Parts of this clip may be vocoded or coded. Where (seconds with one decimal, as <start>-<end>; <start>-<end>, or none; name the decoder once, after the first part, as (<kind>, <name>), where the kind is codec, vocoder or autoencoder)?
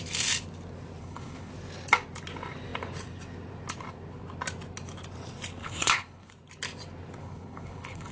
1.0-1.5 (codec, HILCodec); 5.6-6.3; 7.2-8.1